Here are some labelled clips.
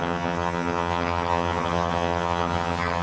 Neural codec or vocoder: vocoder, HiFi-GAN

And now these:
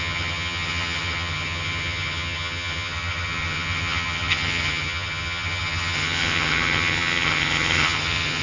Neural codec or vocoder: vocoder, HiFi-GAN